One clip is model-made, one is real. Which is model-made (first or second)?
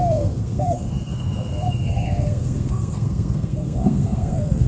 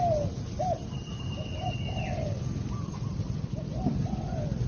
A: first